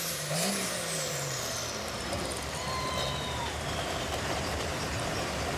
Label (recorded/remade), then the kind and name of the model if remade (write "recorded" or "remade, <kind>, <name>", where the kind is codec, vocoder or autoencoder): remade, vocoder, BigVGAN v2